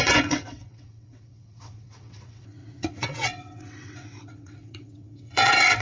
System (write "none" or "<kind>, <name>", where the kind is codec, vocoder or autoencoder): vocoder, WaveNeXt